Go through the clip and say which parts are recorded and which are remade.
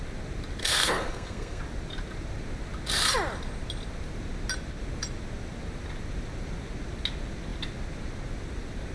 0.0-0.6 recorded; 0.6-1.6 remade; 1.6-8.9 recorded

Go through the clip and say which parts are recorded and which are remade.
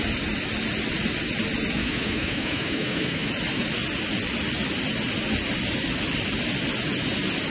0.0-1.8 recorded; 1.8-3.3 remade; 3.3-7.5 recorded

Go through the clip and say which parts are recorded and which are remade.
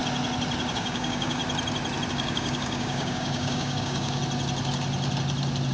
0.0-0.7 recorded; 0.7-1.4 remade; 1.4-2.1 recorded; 2.1-4.2 remade; 4.2-5.7 recorded